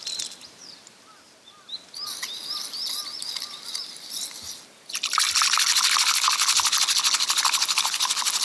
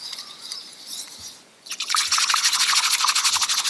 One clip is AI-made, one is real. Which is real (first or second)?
first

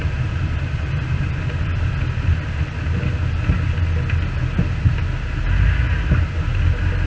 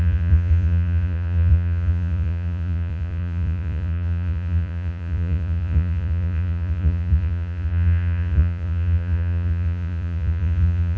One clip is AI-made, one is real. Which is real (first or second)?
first